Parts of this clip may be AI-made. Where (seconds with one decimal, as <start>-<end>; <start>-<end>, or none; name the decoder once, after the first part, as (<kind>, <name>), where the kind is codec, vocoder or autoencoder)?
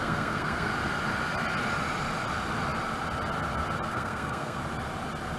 0.0-0.7 (codec, SNAC); 3.9-4.6